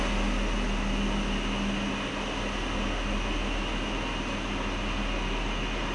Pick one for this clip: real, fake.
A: real